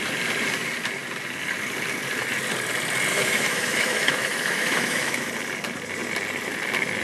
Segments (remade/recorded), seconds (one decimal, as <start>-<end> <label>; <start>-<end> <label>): 0.0-3.1 recorded; 3.1-5.3 remade; 5.3-7.0 recorded